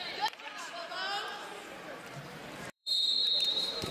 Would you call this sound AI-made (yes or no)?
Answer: yes